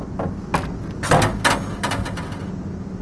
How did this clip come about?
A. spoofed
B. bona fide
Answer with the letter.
B